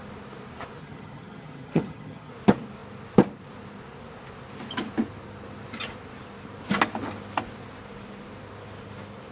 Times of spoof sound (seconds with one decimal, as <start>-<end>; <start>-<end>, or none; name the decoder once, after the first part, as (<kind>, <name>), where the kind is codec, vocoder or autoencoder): 0.8-2.3 (vocoder, HiFi-GAN)

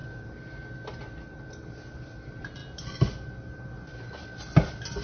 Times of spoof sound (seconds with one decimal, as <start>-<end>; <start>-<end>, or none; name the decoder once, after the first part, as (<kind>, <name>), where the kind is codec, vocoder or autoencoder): none

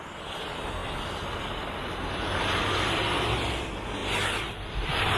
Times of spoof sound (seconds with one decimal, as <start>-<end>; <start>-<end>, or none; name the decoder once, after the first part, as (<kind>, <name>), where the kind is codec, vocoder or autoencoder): none

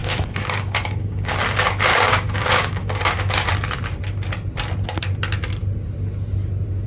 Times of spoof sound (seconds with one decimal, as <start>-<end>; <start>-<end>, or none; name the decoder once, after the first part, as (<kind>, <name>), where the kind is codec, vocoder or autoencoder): 0.0-1.4 (codec, DAC); 1.9-3.5

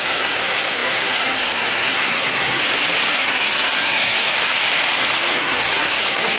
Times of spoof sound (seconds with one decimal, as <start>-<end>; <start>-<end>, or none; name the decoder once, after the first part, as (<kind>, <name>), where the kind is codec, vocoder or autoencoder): 0.0-2.6 (codec, SNAC); 3.1-4.3; 5.3-6.4

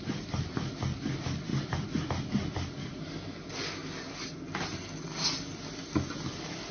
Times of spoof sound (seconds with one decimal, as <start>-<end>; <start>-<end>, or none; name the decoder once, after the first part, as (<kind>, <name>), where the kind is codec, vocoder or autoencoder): none

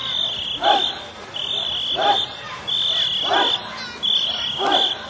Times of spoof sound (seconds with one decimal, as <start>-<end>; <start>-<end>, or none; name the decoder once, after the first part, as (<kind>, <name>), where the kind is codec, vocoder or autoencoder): none